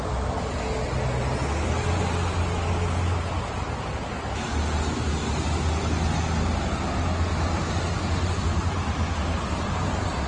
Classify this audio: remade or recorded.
recorded